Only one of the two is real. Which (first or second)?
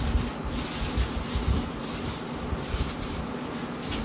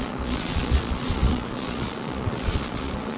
first